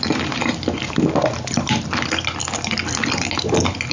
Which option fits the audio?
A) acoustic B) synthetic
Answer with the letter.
A